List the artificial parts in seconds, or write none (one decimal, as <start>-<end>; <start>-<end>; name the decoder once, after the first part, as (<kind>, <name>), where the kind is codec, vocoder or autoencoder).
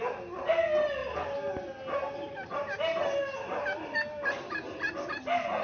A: none